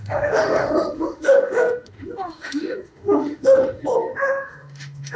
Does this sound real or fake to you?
fake